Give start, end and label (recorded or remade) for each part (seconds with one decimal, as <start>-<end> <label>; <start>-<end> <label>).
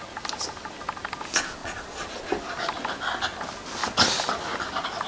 0.0-1.6 recorded; 1.6-2.2 remade; 2.2-5.1 recorded